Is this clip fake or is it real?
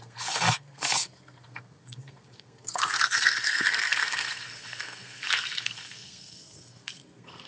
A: fake